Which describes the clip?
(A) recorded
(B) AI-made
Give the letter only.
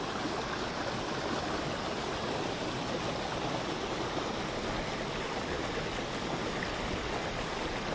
A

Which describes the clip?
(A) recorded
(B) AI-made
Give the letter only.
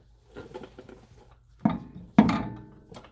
A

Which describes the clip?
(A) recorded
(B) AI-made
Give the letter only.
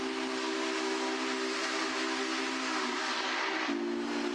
A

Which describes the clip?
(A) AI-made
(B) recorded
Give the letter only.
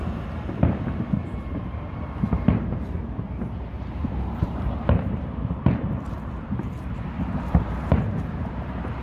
A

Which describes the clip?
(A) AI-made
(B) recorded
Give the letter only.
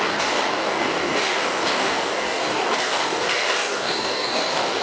A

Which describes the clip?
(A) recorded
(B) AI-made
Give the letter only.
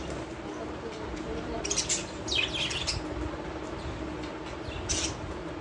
A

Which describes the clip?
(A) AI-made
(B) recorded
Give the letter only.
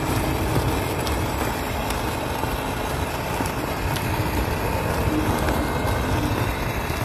B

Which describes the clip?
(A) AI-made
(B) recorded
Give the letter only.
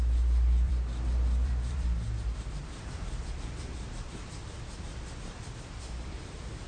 A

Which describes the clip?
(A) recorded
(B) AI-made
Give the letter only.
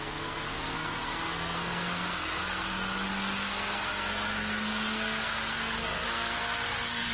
B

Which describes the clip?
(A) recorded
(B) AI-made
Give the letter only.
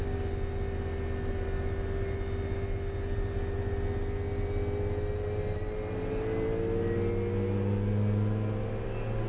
A